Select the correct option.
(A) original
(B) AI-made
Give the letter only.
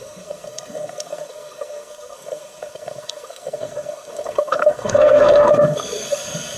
B